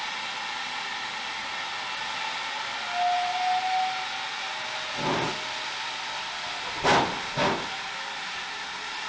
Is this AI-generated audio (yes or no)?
no